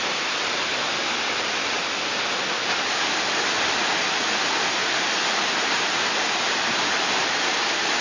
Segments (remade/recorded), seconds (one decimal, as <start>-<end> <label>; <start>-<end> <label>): 0.0-0.7 remade; 0.7-5.5 recorded; 5.5-8.0 remade